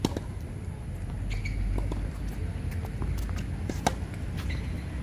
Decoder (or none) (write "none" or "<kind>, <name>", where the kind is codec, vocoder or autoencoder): none